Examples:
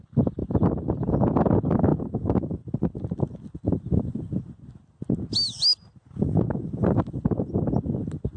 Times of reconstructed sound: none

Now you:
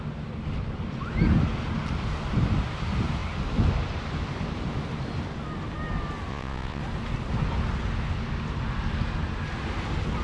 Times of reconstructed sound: 6.3-6.8

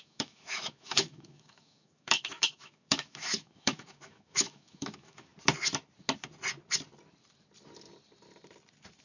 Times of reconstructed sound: 0.0-5.3